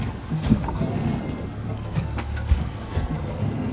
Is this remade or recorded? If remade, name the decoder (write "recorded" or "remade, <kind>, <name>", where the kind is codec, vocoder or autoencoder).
remade, codec, SNAC